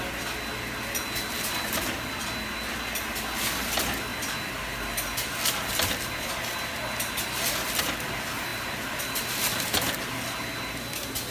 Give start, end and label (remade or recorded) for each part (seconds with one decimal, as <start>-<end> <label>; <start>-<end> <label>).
0.0-8.5 recorded; 8.5-9.0 remade; 9.0-11.3 recorded